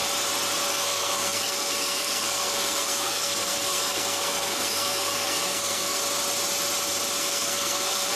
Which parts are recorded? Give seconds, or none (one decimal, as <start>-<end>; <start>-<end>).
0.0-0.7; 6.0-7.2